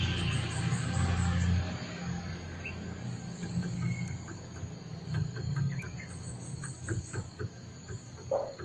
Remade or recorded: remade